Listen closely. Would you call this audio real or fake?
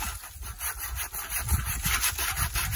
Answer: real